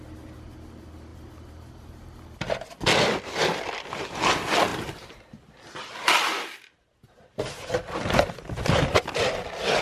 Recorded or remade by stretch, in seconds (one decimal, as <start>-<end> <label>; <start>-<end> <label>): 0.0-4.7 recorded; 4.7-5.2 remade; 5.2-9.8 recorded